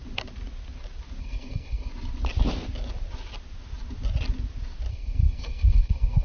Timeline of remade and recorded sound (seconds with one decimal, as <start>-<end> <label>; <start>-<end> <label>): 0.0-1.2 recorded; 1.2-1.9 remade; 1.9-4.9 recorded; 4.9-6.2 remade